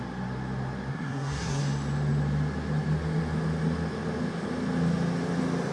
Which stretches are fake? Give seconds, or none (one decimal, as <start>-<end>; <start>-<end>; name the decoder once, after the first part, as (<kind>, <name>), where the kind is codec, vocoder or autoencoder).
0.9-1.6 (codec, SNAC)